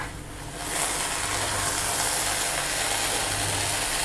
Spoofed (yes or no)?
no